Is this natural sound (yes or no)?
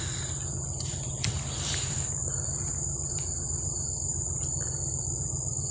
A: no